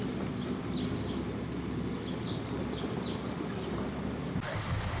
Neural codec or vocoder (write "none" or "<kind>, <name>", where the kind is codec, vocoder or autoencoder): none